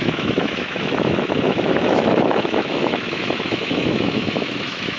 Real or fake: fake